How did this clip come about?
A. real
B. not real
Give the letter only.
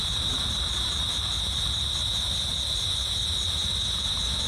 B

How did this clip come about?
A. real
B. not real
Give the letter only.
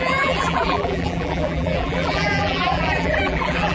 B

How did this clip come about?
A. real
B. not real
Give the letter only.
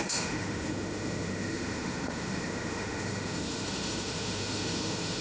B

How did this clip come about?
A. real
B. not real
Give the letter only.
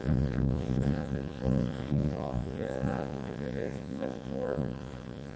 B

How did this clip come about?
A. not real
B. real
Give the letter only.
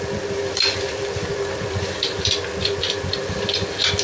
A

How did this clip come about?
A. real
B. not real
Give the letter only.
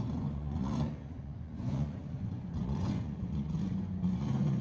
B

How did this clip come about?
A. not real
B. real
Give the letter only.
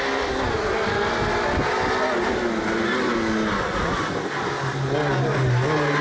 B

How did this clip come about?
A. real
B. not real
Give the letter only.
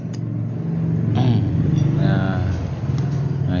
A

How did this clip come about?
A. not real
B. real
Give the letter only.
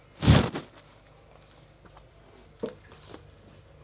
B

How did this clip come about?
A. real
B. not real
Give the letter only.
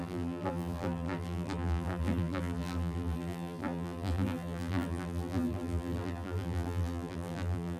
B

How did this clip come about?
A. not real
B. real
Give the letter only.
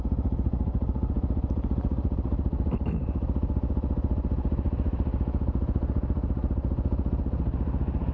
B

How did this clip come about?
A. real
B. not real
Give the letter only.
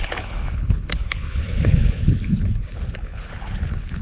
B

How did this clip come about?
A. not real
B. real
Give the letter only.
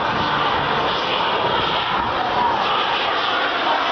B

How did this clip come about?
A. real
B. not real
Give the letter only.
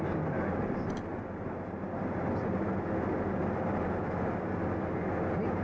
A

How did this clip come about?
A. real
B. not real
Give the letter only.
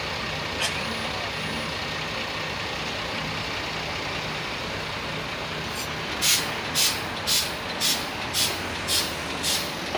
A